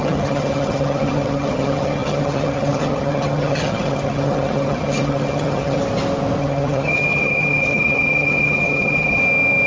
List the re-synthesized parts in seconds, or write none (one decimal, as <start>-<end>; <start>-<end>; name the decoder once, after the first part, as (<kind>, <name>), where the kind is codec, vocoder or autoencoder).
0.0-5.8 (vocoder, HiFi-GAN); 6.4-9.2